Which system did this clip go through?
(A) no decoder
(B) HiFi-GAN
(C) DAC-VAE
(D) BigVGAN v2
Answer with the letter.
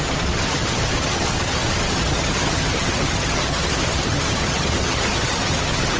B